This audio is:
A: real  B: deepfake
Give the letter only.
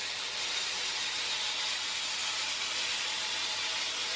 A